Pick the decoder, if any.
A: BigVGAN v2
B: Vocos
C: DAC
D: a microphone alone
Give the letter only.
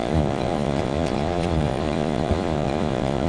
B